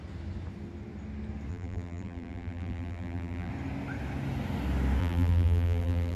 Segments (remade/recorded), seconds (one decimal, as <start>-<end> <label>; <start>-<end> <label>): 0.0-1.5 recorded; 1.5-3.5 remade; 3.5-5.0 recorded; 5.0-6.2 remade